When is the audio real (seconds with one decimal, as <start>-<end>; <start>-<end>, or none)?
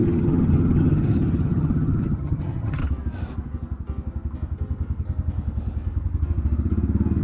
2.8-7.2